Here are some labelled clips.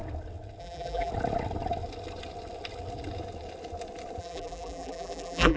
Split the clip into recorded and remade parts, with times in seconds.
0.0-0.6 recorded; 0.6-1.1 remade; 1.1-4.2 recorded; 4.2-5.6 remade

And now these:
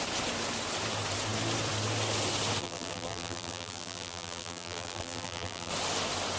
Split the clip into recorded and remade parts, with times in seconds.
0.0-2.6 recorded; 2.6-5.7 remade; 5.7-6.4 recorded

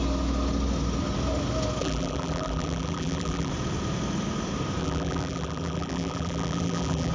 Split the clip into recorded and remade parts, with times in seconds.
0.0-1.8 recorded; 1.8-3.5 remade; 3.5-4.8 recorded; 4.8-7.1 remade